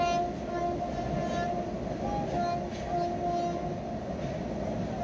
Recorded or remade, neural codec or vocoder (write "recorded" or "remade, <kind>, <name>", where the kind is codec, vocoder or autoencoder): recorded